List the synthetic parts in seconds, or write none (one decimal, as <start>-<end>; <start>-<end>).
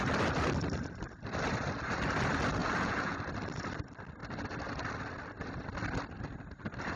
2.6-3.2